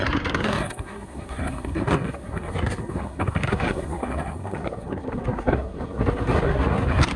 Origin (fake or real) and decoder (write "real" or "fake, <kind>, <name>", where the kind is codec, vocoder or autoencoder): fake, codec, SNAC